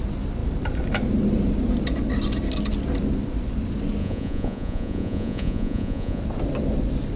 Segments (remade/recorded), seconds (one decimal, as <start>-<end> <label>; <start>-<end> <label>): 0.0-4.0 recorded; 4.0-6.2 remade; 6.2-7.2 recorded